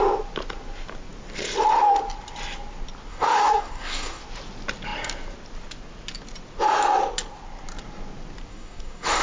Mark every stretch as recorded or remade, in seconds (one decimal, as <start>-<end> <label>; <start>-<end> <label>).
0.0-3.1 recorded; 3.1-4.2 remade; 4.2-8.5 recorded; 8.5-9.2 remade

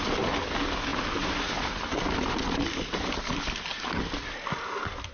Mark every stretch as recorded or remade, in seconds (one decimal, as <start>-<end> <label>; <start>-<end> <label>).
0.0-5.1 recorded

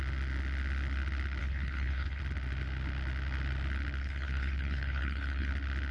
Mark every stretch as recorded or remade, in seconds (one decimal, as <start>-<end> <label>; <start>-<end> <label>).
0.0-1.4 recorded; 1.4-2.2 remade; 2.2-4.0 recorded; 4.0-5.5 remade; 5.5-5.9 recorded

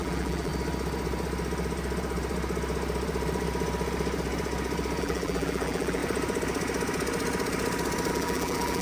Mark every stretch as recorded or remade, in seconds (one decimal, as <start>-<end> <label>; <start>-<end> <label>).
0.0-0.5 remade; 0.5-5.0 recorded; 5.0-6.0 remade; 6.0-8.1 recorded; 8.1-8.8 remade

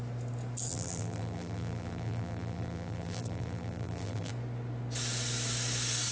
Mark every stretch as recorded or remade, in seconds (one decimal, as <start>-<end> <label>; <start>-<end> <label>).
0.0-0.7 recorded; 0.7-4.3 remade; 4.3-6.1 recorded

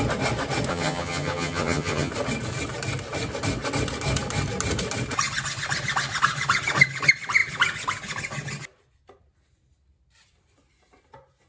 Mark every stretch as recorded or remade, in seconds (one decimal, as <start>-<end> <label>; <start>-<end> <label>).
0.0-0.7 recorded; 0.7-2.1 remade; 2.1-11.5 recorded